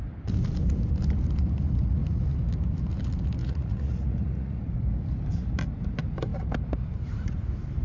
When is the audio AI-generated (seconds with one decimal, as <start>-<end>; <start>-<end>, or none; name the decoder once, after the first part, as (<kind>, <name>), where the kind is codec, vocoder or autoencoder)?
3.4-4.6 (vocoder, Vocos)